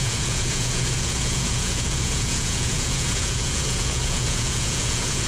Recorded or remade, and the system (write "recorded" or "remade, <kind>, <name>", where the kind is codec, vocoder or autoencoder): remade, vocoder, Vocos